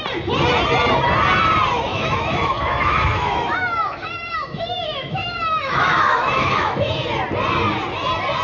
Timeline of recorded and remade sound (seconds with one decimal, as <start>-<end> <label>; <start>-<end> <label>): 0.0-1.9 recorded; 1.9-6.9 remade; 6.9-8.4 recorded